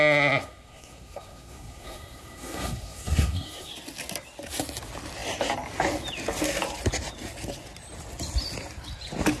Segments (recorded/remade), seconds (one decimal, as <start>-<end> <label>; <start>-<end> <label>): 0.0-0.4 recorded; 0.4-3.7 remade; 3.7-9.4 recorded